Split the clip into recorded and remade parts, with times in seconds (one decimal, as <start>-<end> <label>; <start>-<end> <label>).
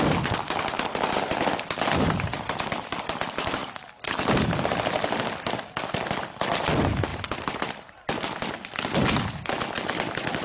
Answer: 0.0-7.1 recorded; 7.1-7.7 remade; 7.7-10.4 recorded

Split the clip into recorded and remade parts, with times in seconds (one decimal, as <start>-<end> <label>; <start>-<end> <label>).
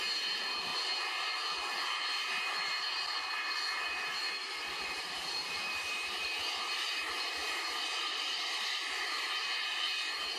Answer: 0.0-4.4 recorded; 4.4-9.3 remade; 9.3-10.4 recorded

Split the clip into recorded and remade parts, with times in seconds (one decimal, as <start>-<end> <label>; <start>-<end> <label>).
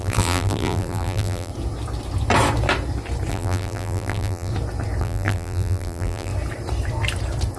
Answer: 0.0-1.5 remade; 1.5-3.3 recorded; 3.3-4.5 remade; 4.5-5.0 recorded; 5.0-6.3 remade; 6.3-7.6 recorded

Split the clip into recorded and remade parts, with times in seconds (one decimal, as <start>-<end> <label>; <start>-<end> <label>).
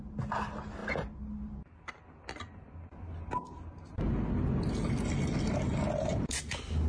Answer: 0.0-6.9 recorded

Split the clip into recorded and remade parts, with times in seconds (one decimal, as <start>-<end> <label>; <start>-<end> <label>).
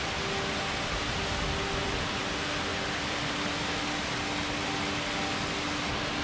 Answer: 0.0-1.8 recorded; 1.8-2.3 remade; 2.3-2.7 recorded; 2.7-3.8 remade; 3.8-6.2 recorded